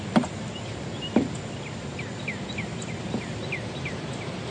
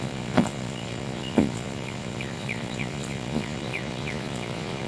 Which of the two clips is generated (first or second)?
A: second